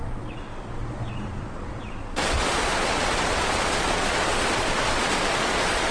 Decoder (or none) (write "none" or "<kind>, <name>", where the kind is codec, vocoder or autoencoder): vocoder, Vocos